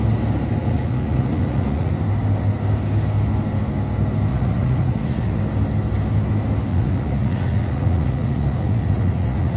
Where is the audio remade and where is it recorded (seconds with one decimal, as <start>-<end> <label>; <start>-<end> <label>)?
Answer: 0.0-0.6 recorded; 0.6-1.9 remade; 1.9-4.3 recorded; 4.3-5.4 remade; 5.4-6.7 recorded; 6.7-9.6 remade